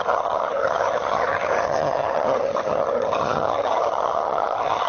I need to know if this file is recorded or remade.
remade